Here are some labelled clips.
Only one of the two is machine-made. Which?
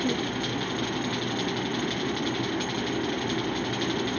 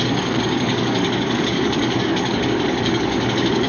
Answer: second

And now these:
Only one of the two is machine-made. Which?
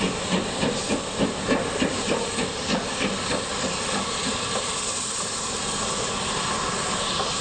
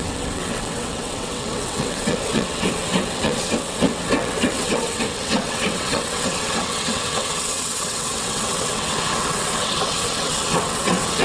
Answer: second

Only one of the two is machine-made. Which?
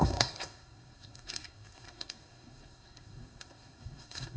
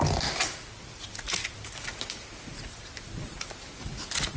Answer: first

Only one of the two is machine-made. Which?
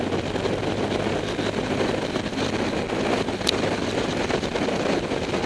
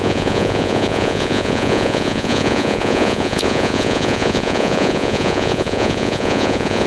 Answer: second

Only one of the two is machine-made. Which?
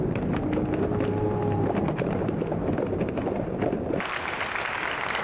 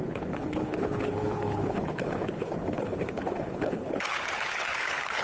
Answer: second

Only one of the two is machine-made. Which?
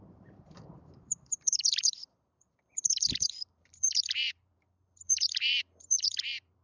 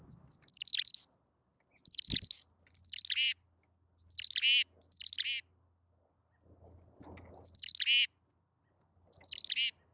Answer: first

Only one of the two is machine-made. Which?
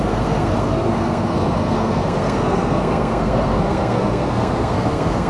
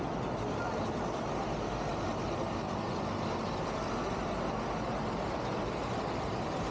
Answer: first